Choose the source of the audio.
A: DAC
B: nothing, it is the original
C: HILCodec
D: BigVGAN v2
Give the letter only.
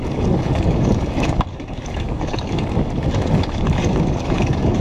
A